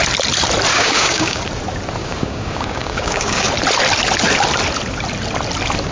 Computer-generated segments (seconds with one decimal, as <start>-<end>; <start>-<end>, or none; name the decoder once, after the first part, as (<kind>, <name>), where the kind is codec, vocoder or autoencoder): 0.7-1.4 (codec, DAC); 2.0-3.5